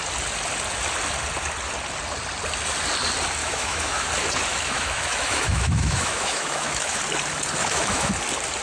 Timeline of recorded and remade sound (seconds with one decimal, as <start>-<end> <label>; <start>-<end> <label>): 0.0-3.4 recorded; 3.4-4.1 remade; 4.1-4.5 recorded; 4.5-7.0 remade; 7.0-7.6 recorded; 7.6-8.1 remade; 8.1-8.6 recorded